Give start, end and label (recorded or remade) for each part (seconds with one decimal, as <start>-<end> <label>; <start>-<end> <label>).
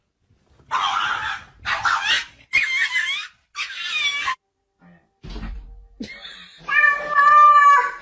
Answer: 0.0-2.2 recorded; 2.2-4.8 remade; 4.8-8.0 recorded